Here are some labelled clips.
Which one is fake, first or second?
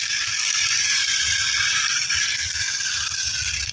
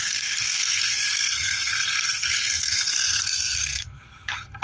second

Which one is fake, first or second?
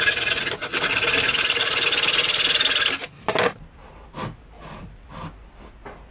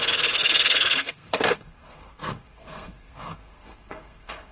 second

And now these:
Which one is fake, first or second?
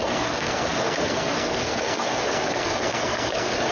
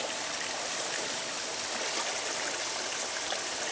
first